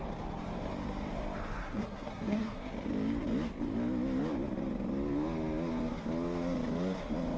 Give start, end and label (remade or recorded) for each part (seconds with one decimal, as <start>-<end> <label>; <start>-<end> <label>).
0.0-1.6 recorded; 1.6-2.7 remade; 2.7-7.4 recorded